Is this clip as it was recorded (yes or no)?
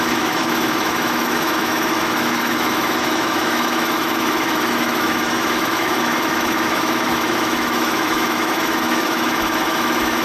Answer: no